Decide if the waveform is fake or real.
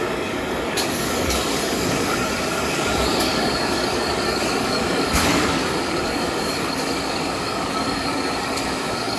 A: fake